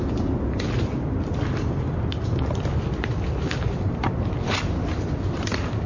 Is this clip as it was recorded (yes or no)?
yes